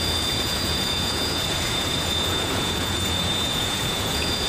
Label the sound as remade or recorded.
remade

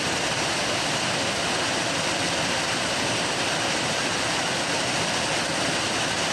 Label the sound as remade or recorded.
recorded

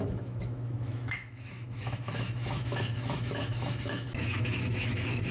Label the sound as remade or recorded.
remade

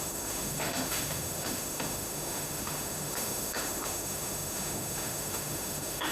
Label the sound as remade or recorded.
remade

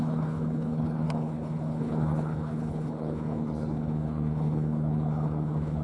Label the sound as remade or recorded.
remade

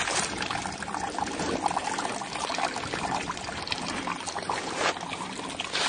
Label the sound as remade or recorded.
recorded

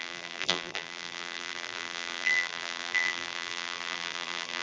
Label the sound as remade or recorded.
remade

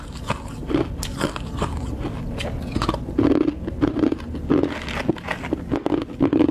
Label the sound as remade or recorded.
recorded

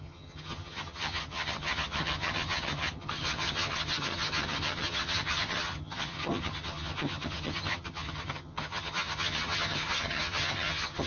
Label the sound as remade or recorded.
remade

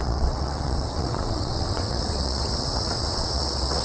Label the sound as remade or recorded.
remade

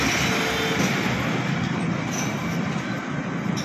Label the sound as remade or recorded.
recorded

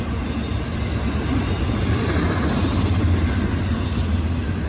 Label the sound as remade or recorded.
recorded